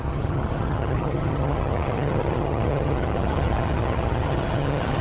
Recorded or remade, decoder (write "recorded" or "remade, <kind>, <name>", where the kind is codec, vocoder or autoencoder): remade, vocoder, HiFi-GAN